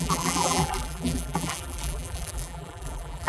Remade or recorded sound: remade